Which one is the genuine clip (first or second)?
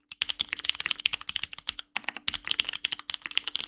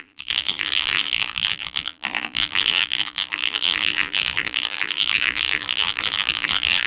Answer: first